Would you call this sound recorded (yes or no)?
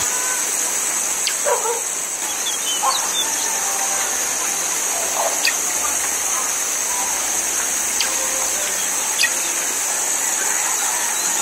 yes